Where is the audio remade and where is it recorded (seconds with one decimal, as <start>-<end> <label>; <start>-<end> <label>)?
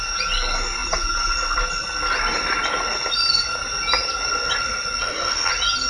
0.0-5.0 recorded; 5.0-5.5 remade; 5.5-5.9 recorded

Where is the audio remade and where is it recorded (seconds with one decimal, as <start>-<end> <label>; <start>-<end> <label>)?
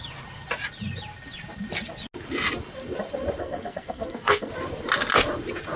0.0-3.4 recorded; 3.4-4.5 remade; 4.5-5.8 recorded